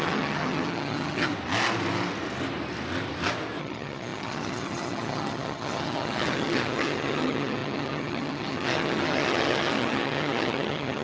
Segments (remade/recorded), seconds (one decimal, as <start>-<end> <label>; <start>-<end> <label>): 0.0-1.3 remade; 1.3-3.6 recorded; 3.6-11.0 remade